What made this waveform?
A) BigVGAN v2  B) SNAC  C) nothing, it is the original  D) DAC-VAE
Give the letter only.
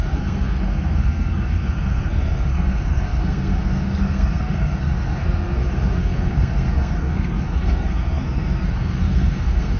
B